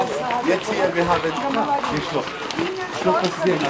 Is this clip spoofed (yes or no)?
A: no